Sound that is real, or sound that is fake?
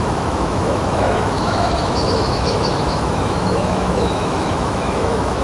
fake